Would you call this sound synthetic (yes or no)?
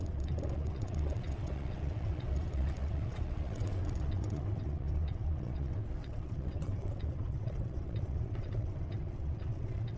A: yes